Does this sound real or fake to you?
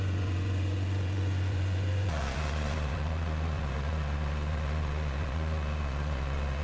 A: fake